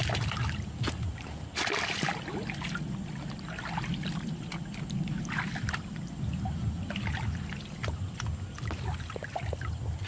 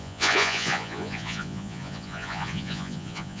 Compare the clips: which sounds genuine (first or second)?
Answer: first